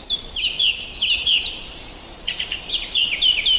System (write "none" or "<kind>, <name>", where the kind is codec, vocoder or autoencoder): vocoder, BigVGAN v2